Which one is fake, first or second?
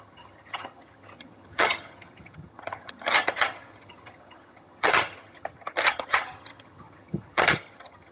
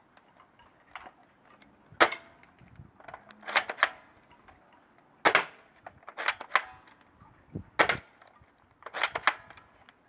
first